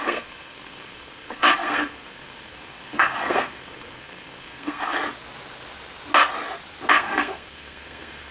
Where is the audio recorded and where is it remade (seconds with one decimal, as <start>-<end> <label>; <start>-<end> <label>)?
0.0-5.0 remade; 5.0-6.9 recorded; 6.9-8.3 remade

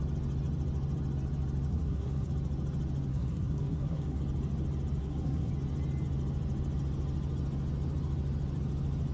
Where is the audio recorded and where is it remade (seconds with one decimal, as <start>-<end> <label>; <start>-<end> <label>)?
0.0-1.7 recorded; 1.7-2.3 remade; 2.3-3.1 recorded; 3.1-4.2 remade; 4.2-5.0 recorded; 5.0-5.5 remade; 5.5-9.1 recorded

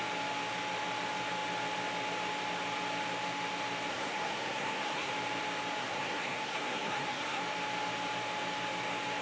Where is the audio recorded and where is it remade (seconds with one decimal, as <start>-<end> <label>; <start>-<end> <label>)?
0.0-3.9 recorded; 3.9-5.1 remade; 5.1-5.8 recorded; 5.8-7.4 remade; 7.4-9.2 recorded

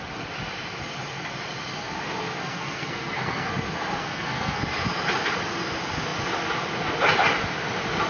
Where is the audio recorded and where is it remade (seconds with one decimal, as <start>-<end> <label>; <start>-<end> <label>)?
0.0-2.4 recorded; 2.4-3.5 remade; 3.5-4.0 recorded; 4.0-4.6 remade; 4.6-8.1 recorded

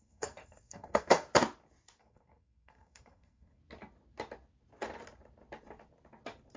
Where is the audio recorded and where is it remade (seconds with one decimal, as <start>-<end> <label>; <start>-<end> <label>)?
0.0-1.3 remade; 1.3-2.0 recorded; 2.0-3.6 remade; 3.6-6.6 recorded

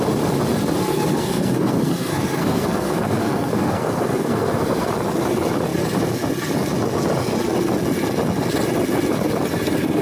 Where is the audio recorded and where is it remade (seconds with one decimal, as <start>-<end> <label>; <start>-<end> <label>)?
0.0-0.9 recorded; 0.9-4.9 remade; 4.9-10.0 recorded